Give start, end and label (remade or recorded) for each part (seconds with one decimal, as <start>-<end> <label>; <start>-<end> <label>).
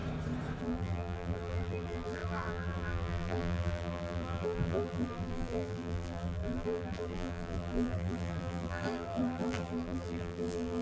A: 0.0-0.6 recorded; 0.6-10.8 remade